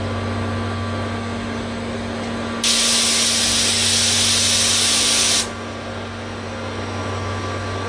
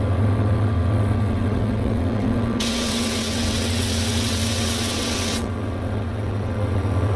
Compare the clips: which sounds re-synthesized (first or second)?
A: second